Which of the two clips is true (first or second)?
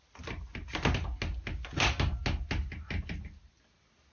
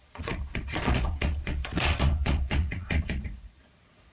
first